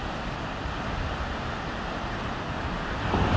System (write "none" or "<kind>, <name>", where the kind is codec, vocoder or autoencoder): none